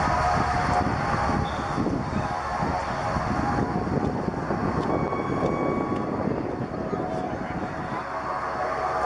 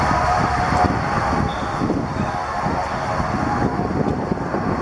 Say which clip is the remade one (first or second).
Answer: second